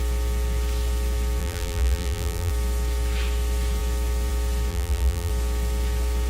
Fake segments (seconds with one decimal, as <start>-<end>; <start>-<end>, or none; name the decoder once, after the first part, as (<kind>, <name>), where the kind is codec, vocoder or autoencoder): 1.4-2.5 (vocoder, BigVGAN v2); 4.7-5.3